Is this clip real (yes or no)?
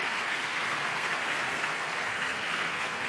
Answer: no